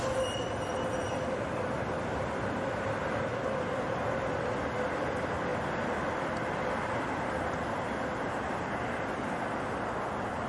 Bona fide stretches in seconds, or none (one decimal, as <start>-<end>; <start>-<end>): 0.0-10.5